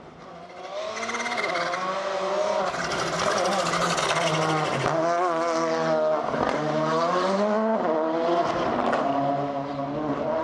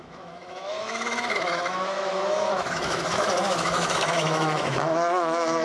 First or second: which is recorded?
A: first